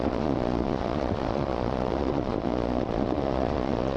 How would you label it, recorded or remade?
remade